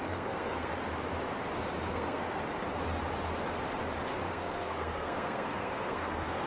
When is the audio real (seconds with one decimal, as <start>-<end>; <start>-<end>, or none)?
0.7-1.9; 2.4-4.3